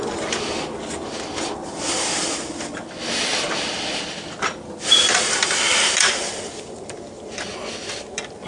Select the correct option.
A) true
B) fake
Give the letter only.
A